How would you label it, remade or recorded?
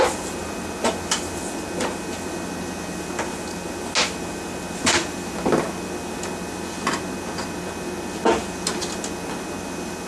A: recorded